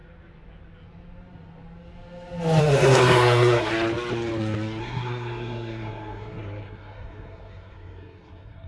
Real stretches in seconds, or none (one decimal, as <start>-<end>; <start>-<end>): 0.0-2.6; 3.7-4.8